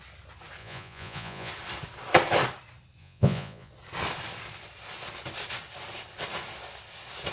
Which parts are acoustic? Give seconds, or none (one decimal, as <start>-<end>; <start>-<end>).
0.0-0.6; 1.5-3.0; 3.7-7.3